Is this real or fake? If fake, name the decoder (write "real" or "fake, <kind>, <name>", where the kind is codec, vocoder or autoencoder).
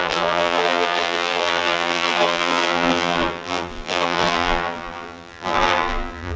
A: fake, vocoder, BigVGAN v2